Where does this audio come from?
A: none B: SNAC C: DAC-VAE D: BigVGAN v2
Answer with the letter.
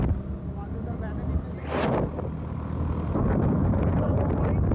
A